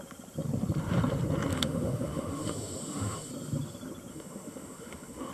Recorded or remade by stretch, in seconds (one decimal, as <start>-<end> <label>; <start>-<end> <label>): 0.0-1.5 recorded; 1.5-3.3 remade; 3.3-4.1 recorded; 4.1-5.3 remade